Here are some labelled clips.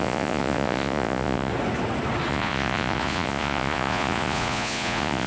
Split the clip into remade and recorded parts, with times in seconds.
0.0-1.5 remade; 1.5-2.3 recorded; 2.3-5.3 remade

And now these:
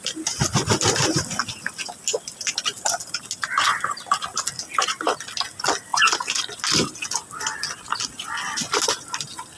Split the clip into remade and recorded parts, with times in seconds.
0.0-9.6 recorded